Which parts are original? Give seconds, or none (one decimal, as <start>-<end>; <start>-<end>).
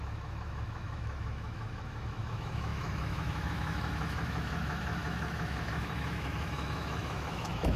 none